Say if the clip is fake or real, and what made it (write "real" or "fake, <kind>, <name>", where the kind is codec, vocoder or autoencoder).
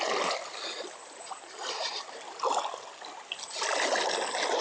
real